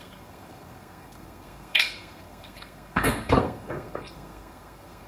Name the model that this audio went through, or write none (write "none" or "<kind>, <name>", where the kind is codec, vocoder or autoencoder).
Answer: codec, SNAC